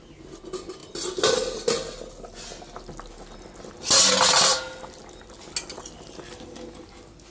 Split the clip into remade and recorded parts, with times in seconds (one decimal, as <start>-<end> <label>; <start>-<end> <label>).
0.0-7.3 recorded